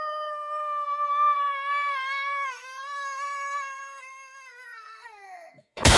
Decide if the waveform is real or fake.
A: fake